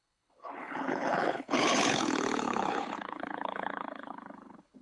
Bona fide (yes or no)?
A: no